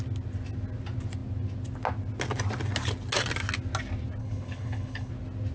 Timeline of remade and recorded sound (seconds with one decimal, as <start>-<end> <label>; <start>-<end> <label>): 0.0-4.2 recorded; 4.2-5.1 remade; 5.1-5.5 recorded